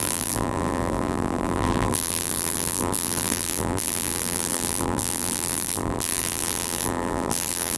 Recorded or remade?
remade